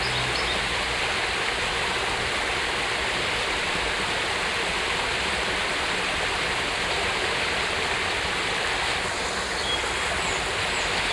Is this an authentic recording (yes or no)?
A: yes